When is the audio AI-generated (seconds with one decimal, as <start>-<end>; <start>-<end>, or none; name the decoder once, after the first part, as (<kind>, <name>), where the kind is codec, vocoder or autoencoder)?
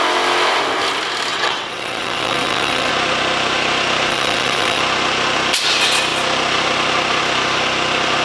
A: 1.3-2.9 (vocoder, WaveNeXt); 4.1-4.8